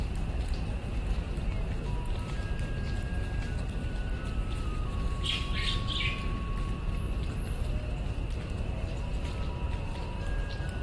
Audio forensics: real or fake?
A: real